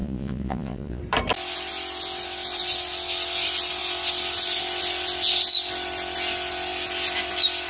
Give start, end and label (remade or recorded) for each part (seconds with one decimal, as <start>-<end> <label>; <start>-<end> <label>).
0.0-1.0 remade; 1.0-7.7 recorded